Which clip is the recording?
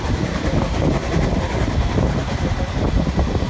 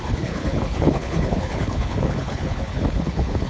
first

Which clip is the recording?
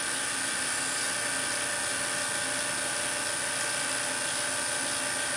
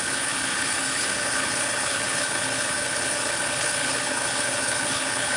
first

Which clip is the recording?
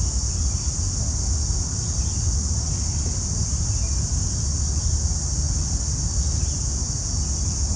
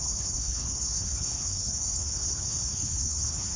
first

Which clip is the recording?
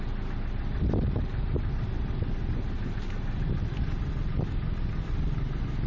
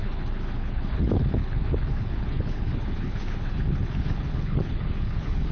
first